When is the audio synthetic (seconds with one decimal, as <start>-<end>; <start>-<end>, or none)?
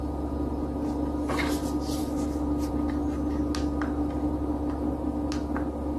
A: none